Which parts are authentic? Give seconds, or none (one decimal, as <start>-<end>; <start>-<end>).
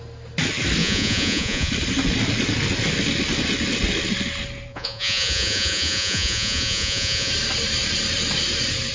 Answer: 0.0-0.8; 1.7-4.7; 7.3-8.9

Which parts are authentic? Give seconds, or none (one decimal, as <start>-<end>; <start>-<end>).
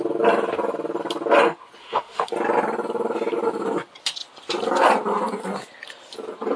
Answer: 0.0-1.8; 2.3-6.6